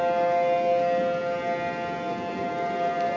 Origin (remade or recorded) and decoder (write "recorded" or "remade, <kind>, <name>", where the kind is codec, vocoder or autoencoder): recorded